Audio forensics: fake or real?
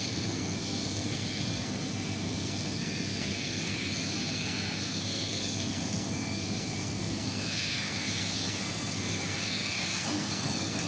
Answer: fake